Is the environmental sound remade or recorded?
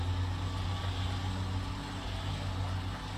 recorded